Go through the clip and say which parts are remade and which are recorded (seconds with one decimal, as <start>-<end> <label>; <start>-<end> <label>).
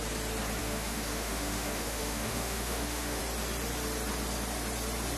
0.0-0.6 recorded; 0.6-3.2 remade; 3.2-5.2 recorded